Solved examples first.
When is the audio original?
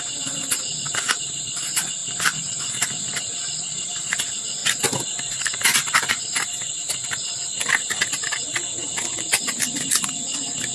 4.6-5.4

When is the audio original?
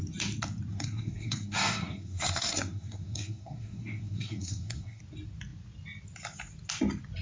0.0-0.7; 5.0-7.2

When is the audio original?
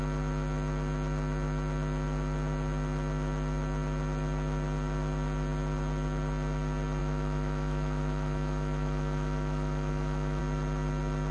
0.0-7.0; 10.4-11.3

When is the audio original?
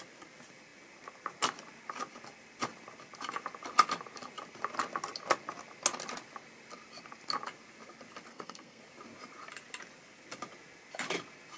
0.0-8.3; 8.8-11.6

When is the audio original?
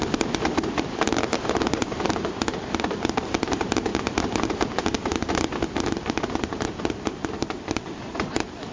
0.0-8.7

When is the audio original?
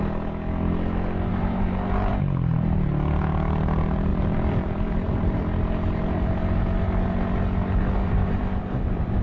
0.0-1.3; 2.1-4.1; 5.4-8.0